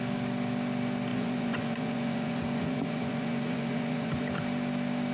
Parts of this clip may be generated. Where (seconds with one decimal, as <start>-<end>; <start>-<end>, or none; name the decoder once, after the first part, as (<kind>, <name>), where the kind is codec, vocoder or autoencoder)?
1.1-4.2 (vocoder, Vocos)